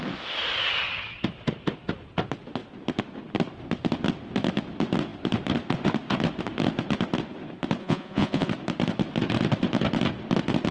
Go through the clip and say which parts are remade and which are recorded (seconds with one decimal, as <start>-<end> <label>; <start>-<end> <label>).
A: 0.0-7.8 recorded; 7.8-8.5 remade; 8.5-10.7 recorded